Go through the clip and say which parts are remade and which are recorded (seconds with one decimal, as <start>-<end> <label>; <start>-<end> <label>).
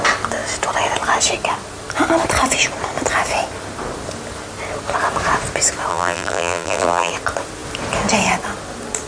0.0-5.9 recorded; 5.9-7.1 remade; 7.1-9.1 recorded